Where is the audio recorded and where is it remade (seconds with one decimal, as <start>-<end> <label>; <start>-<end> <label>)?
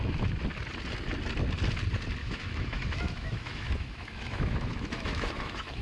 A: 0.0-2.2 recorded; 2.2-5.8 remade